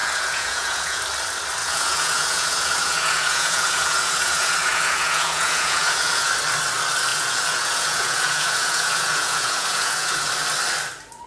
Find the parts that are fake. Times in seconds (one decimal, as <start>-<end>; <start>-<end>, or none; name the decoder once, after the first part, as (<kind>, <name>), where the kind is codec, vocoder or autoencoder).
0.0-1.0 (vocoder, Vocos); 1.6-6.3; 7.1-10.3